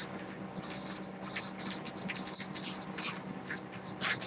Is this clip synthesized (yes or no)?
no